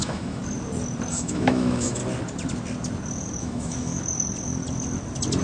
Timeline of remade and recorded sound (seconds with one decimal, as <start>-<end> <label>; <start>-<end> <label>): 0.0-0.4 remade; 0.4-1.1 recorded; 1.1-2.0 remade; 2.0-3.4 recorded; 3.4-3.9 remade; 3.9-5.4 recorded